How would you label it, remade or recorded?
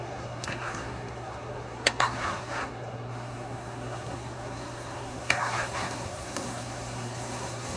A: remade